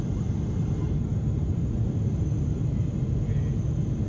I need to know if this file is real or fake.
real